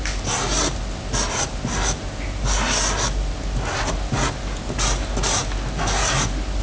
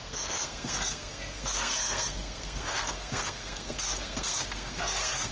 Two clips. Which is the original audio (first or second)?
first